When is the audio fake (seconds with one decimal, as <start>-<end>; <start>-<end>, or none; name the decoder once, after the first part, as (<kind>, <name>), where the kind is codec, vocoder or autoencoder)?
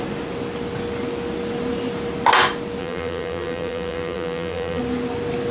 2.8-4.8 (vocoder, BigVGAN v2)